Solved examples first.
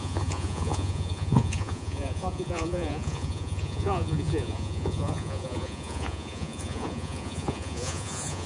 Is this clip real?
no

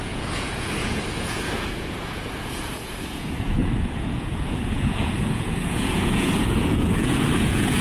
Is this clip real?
no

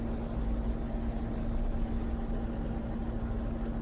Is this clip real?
yes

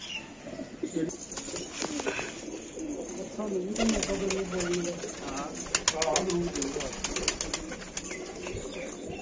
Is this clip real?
yes